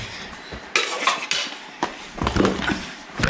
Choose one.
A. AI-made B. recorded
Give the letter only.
B